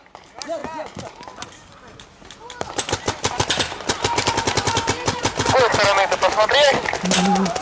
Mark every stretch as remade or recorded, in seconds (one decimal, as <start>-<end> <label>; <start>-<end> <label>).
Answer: 0.0-7.6 recorded